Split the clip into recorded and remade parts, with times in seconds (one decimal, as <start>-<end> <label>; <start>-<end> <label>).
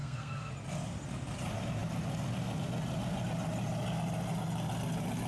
0.0-0.5 remade; 0.5-5.3 recorded